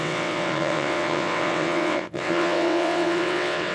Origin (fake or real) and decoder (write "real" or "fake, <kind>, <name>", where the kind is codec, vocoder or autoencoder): fake, vocoder, WaveNeXt